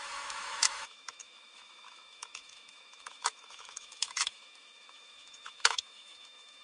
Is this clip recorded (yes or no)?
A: no